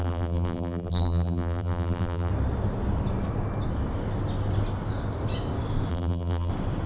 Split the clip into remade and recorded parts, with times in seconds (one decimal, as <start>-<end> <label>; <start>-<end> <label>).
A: 0.0-2.3 remade; 2.3-5.9 recorded; 5.9-6.5 remade; 6.5-6.9 recorded